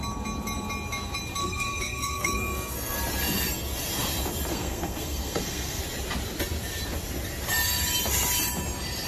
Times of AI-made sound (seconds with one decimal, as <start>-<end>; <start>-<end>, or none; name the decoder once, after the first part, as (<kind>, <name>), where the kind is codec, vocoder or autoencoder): 1.4-3.0 (codec, SNAC); 4.5-5.8